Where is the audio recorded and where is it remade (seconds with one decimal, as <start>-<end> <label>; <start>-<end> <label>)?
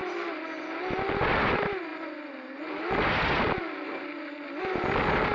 0.0-5.3 recorded